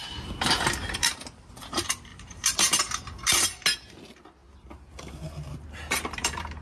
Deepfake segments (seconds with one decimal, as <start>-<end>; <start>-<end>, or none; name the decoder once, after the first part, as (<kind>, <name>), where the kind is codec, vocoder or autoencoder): 0.8-1.5 (vocoder, BigVGAN v2); 2.1-2.8